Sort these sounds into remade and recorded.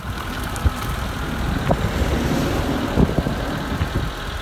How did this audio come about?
recorded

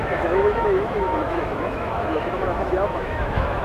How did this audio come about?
remade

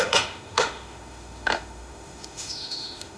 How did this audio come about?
remade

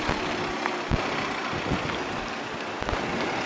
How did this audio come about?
recorded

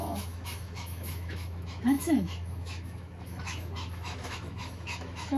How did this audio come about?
remade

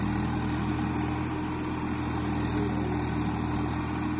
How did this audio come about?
recorded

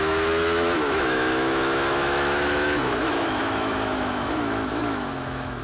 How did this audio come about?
remade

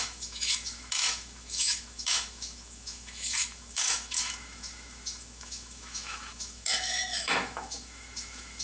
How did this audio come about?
remade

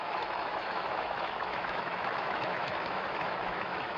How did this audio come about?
remade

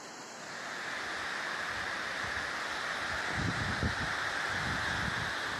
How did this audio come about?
recorded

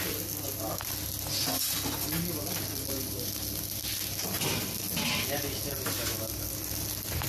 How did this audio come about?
recorded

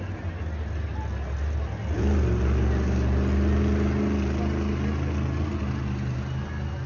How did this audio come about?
recorded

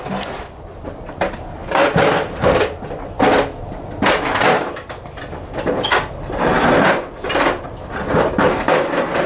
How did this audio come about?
recorded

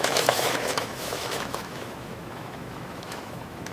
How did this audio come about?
remade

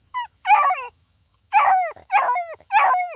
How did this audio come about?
remade